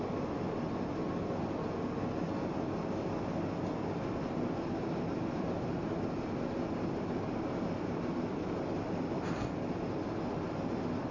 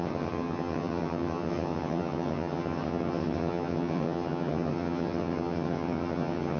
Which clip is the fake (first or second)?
second